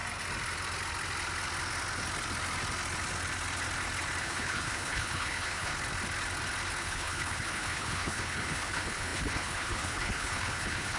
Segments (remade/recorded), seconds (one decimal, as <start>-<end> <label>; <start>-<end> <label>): 0.0-4.2 recorded; 4.2-5.7 remade; 5.7-6.8 recorded; 6.8-11.0 remade